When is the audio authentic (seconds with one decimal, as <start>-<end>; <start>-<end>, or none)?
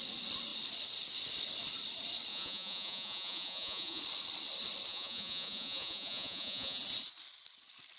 0.0-2.3; 4.0-4.9; 6.8-8.0